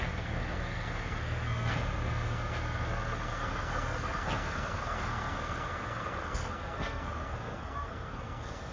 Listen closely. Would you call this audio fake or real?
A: fake